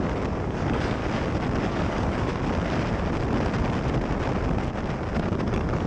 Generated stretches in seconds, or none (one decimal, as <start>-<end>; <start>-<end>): 0.0-1.0; 1.6-2.3; 5.4-5.9